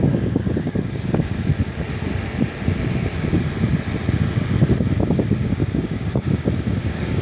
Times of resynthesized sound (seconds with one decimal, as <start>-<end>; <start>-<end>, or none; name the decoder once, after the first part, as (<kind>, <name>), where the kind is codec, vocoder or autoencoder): 0.0-1.5 (codec, DAC); 5.2-7.2